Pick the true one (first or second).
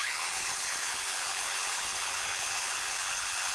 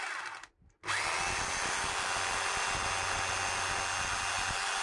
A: second